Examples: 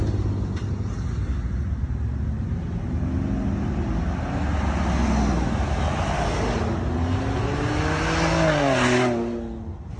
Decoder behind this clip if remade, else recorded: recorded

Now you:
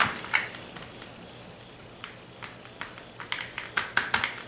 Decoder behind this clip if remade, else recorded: recorded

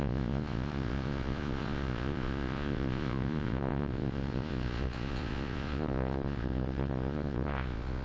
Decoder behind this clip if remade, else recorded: remade, vocoder, Vocos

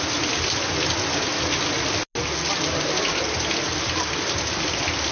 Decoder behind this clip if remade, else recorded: recorded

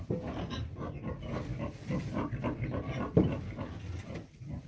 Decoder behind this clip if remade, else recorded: recorded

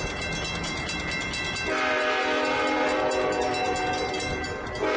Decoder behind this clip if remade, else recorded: recorded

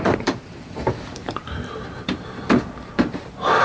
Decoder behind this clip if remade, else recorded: remade, vocoder, BigVGAN v2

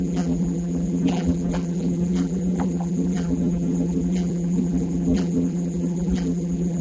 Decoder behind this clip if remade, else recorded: remade, vocoder, BigVGAN v2